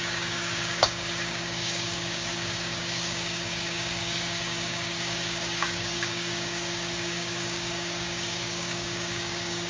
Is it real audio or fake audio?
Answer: fake